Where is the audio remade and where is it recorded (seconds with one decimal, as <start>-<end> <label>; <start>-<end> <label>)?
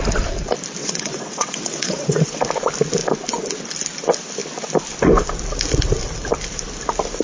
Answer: 0.0-0.8 recorded; 0.8-2.4 remade; 2.4-7.2 recorded